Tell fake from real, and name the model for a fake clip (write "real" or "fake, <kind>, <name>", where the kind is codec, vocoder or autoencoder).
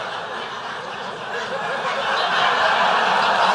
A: real